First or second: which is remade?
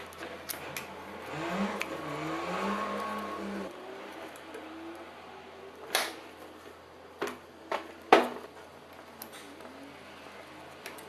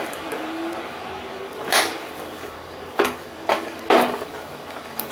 second